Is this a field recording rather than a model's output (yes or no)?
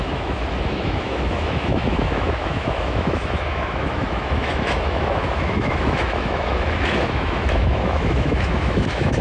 no